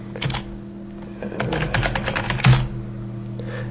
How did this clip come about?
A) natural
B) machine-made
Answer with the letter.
A